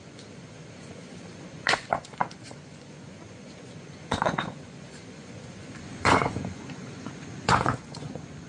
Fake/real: fake